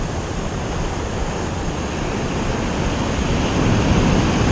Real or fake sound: real